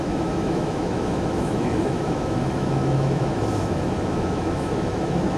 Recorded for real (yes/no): no